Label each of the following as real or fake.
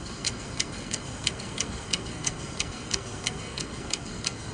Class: fake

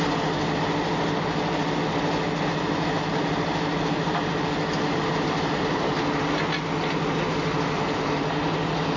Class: real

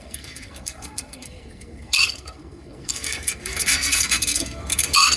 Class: fake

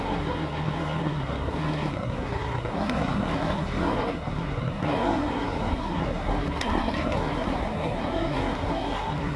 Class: fake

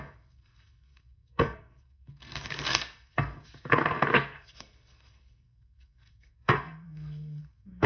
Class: fake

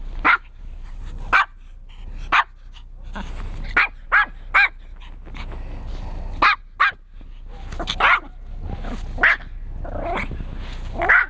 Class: real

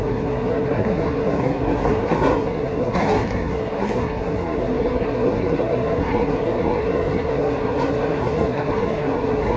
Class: fake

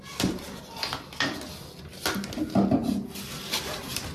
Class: real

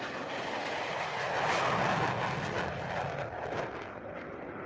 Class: real